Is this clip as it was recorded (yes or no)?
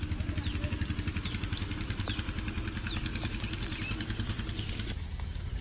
yes